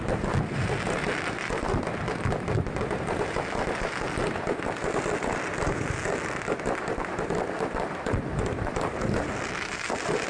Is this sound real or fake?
real